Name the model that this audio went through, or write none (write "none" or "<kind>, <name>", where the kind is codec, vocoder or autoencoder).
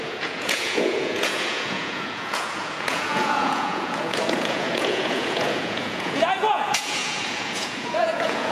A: vocoder, Vocos